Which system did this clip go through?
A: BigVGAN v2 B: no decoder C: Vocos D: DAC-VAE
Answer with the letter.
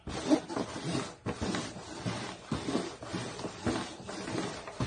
B